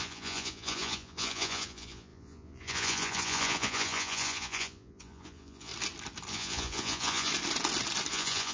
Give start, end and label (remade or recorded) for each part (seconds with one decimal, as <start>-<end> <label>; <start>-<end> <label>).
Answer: 0.0-5.7 remade; 5.7-6.3 recorded; 6.3-7.3 remade; 7.3-8.1 recorded; 8.1-8.5 remade